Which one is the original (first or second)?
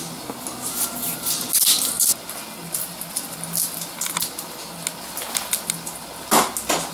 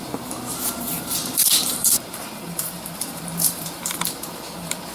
first